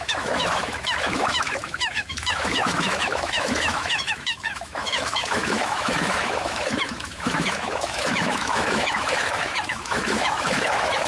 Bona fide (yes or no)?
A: no